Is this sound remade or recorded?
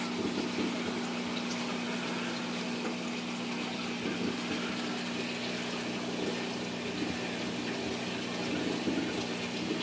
recorded